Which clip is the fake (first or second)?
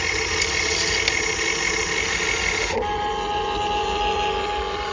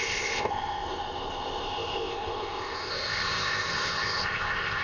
second